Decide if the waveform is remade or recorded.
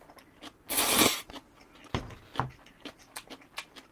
recorded